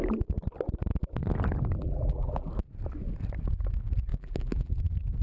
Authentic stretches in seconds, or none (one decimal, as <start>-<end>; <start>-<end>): 0.0-1.8; 2.5-4.1; 4.8-5.2